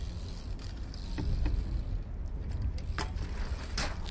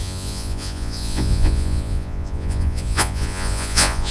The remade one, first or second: second